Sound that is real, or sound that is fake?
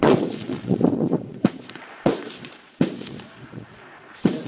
fake